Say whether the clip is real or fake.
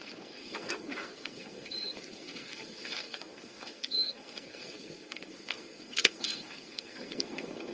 fake